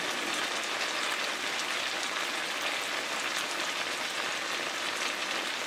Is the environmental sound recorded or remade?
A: recorded